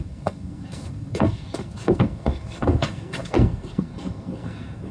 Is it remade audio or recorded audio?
remade